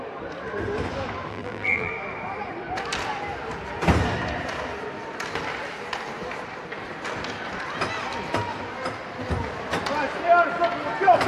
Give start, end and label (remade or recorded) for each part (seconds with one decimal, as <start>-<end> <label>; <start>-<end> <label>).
0.0-1.3 recorded; 1.3-1.9 remade; 1.9-11.3 recorded